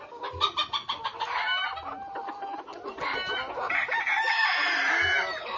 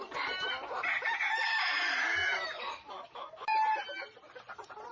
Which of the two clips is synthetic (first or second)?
second